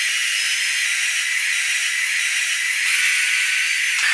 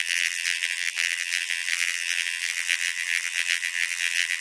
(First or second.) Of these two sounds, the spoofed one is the second